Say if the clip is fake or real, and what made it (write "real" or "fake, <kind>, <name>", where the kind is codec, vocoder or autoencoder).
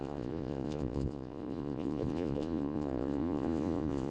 fake, vocoder, Vocos